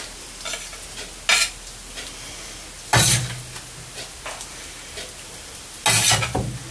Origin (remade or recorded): recorded